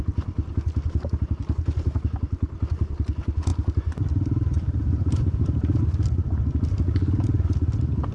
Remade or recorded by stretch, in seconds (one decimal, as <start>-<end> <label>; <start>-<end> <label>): 0.0-3.5 recorded; 3.5-5.8 remade; 5.8-8.1 recorded